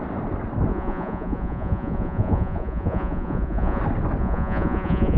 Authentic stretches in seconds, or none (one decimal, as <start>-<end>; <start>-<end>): 0.0-0.7; 3.8-4.2